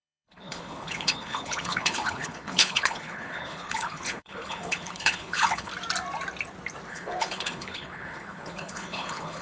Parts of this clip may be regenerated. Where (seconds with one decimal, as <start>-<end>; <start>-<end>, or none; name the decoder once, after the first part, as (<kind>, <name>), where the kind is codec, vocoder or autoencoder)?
0.0-5.7 (codec, HILCodec); 6.9-9.4